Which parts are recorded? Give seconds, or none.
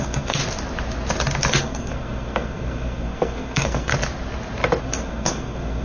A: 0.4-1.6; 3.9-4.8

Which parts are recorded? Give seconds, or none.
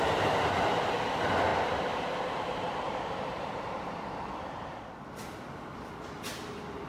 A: 0.0-1.5; 4.3-6.9